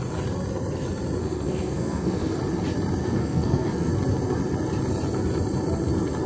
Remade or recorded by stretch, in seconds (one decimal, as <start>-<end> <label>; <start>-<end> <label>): 0.0-1.2 recorded; 1.2-2.4 remade; 2.4-3.0 recorded; 3.0-3.9 remade; 3.9-6.3 recorded

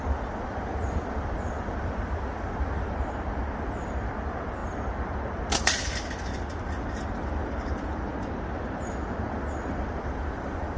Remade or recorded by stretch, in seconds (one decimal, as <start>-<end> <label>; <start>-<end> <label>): 0.0-8.1 remade; 8.1-8.8 recorded; 8.8-10.8 remade

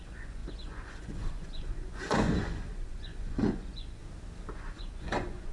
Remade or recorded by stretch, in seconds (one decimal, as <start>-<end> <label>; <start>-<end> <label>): 0.0-4.0 remade; 4.0-4.5 recorded; 4.5-5.5 remade